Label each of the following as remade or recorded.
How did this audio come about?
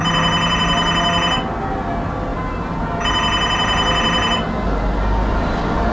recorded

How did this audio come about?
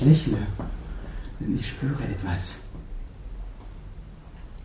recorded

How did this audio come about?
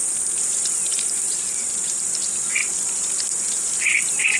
recorded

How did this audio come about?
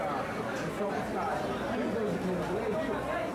recorded